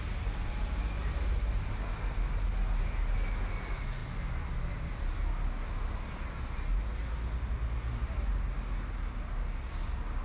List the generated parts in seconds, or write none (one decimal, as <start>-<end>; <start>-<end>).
none